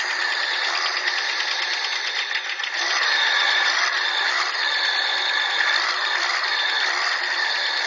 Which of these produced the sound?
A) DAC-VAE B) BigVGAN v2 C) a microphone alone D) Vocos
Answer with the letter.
C